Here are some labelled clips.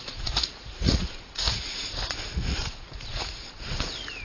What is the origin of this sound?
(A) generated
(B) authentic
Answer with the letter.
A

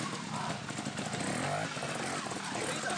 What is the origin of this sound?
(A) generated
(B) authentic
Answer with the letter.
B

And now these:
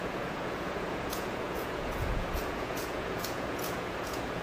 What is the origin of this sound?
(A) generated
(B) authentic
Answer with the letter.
A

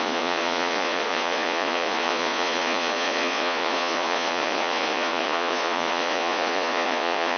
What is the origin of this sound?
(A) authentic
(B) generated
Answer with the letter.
B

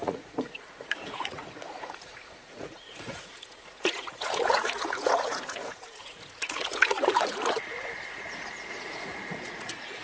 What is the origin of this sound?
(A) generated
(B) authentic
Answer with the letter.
A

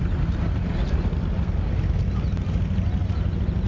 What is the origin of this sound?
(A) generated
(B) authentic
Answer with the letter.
B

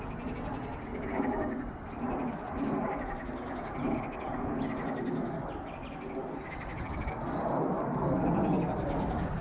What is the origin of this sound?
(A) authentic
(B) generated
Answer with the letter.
A